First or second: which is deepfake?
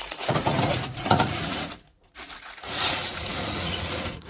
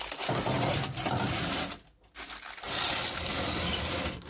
first